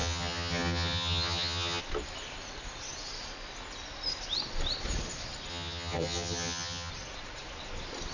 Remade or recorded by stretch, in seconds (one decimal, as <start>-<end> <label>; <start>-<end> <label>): 0.0-1.8 remade; 1.8-5.5 recorded; 5.5-6.9 remade; 6.9-8.1 recorded